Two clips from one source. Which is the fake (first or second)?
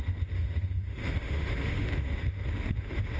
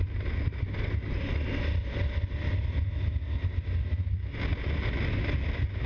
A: first